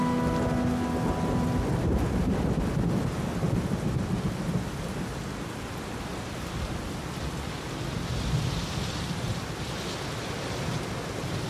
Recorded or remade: recorded